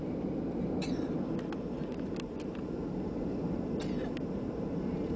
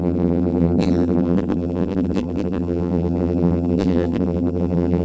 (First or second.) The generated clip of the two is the second